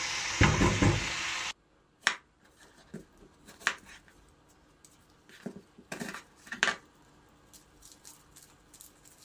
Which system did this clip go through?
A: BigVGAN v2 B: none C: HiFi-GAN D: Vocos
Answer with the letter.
B